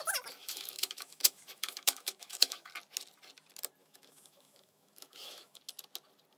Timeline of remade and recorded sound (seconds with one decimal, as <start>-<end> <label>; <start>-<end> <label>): 0.0-0.4 recorded; 0.4-2.7 remade; 2.7-3.8 recorded; 3.8-5.6 remade; 5.6-6.4 recorded